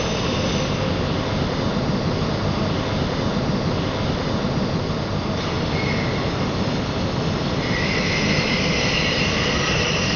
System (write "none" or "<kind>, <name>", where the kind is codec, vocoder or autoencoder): none